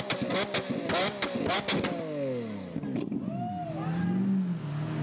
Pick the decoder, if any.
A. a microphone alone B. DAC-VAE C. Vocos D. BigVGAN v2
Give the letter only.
A